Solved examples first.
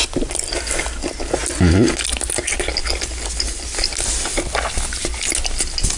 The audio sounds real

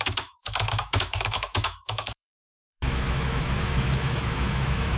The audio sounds fake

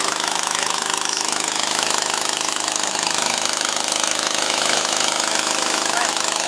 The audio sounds fake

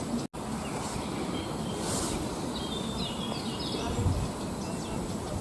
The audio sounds real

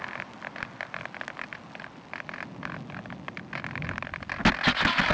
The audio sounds real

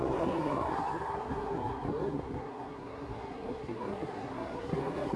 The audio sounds fake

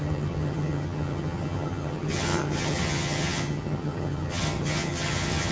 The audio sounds fake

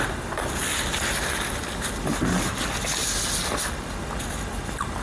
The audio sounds real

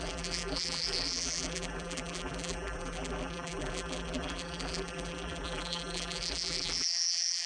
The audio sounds fake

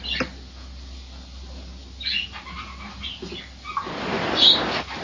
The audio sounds real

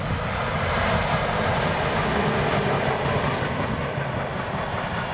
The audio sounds real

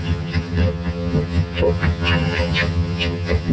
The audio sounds fake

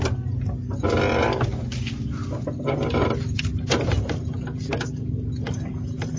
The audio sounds real